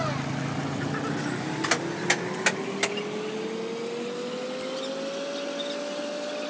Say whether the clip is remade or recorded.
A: recorded